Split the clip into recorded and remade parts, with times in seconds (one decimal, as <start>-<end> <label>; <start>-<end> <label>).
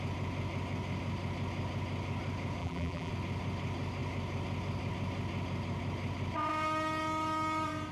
0.0-2.6 recorded; 2.6-3.1 remade; 3.1-7.9 recorded